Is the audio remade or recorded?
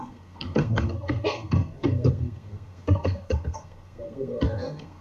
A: remade